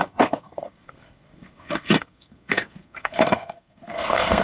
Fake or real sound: fake